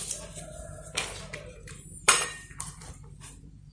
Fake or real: fake